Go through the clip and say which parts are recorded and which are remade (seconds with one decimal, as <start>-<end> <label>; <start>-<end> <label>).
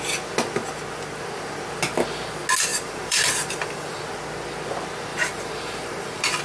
0.0-2.7 recorded; 2.7-4.0 remade; 4.0-5.1 recorded; 5.1-6.4 remade